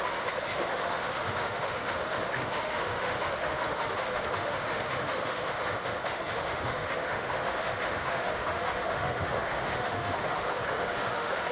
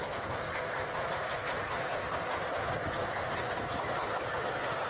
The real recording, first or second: second